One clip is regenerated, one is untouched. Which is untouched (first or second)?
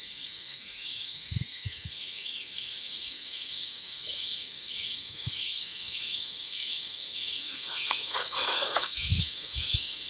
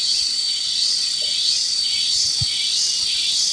second